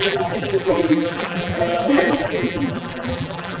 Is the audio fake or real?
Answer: fake